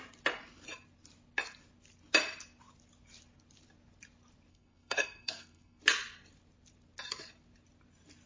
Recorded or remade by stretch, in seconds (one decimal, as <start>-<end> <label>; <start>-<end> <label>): 0.0-4.5 recorded; 4.5-5.8 remade; 5.8-8.3 recorded